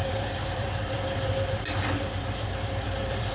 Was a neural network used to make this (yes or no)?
yes